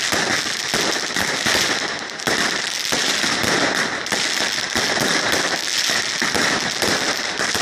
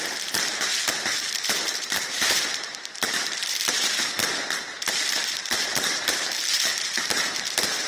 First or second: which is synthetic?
second